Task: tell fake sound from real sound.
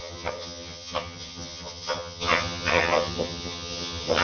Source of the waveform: fake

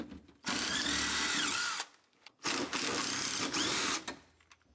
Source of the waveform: real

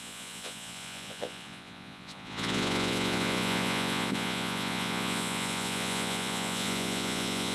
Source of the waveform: fake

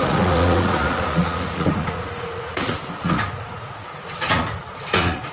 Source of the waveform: fake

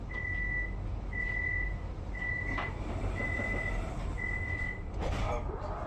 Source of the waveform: real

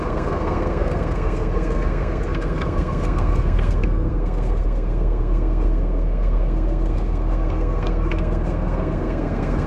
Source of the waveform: fake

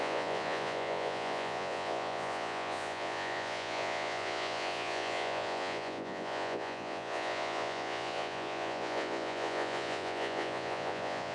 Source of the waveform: fake